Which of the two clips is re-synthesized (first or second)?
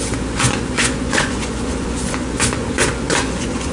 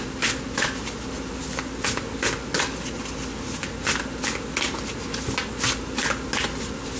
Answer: first